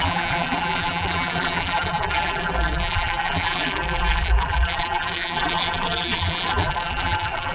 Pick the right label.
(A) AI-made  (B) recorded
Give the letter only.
A